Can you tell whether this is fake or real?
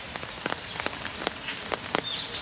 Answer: real